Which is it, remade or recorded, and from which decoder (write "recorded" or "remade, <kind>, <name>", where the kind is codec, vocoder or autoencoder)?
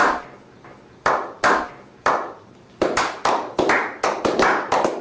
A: recorded